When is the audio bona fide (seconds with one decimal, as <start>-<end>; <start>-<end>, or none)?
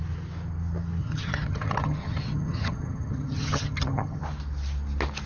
0.0-1.0; 4.2-5.3